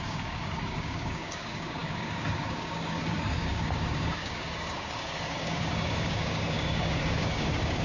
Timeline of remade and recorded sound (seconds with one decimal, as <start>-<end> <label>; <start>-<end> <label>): 0.0-7.8 remade